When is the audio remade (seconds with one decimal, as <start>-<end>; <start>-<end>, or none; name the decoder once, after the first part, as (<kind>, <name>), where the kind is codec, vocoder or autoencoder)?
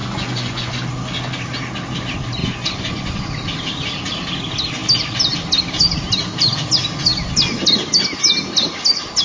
0.0-0.7 (vocoder, Vocos); 2.4-3.3